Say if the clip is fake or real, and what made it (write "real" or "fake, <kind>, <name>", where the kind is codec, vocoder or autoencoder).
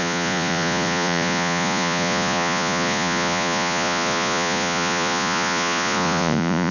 fake, vocoder, Vocos